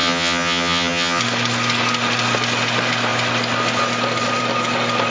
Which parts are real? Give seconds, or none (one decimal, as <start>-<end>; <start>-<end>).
1.2-5.1

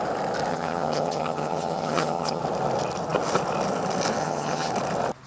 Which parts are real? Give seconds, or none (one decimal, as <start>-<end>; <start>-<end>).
0.0-0.5; 2.4-4.2; 4.7-5.3

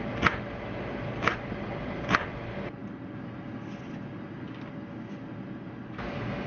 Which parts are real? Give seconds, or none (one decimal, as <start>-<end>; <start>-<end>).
0.0-6.5

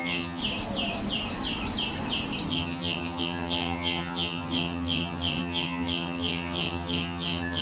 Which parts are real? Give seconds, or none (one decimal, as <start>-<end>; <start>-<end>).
0.4-2.5

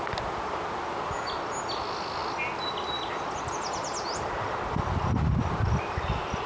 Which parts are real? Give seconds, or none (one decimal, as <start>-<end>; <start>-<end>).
0.0-6.5